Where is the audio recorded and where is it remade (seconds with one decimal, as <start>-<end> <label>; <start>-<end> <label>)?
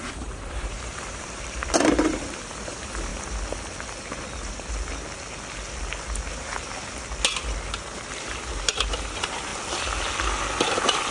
0.0-3.1 remade; 3.1-8.1 recorded; 8.1-9.5 remade; 9.5-11.1 recorded